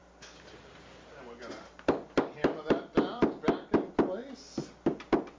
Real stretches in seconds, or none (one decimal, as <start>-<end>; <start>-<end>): 0.0-5.4